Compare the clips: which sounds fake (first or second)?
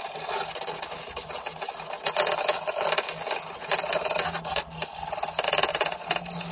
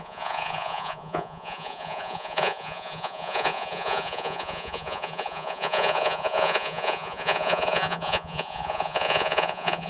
second